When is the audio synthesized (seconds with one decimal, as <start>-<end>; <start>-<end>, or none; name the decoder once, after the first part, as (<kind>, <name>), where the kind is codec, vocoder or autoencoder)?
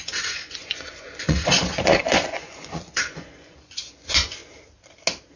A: 0.0-4.4 (vocoder, Vocos)